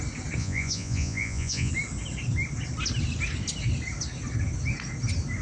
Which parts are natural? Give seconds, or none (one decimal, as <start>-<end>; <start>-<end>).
0.0-0.4; 1.7-5.4